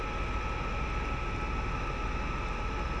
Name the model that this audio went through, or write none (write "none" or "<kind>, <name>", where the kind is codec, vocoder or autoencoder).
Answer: none